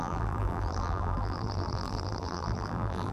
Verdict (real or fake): fake